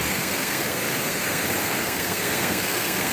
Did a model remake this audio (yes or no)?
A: yes